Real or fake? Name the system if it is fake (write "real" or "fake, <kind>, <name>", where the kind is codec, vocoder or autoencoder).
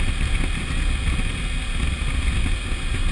real